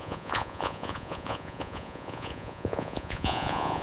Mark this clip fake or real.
fake